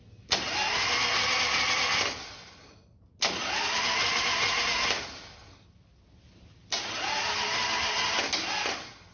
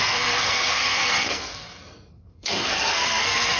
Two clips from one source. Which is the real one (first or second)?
first